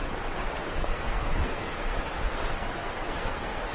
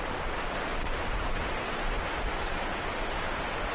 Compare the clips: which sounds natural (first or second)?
second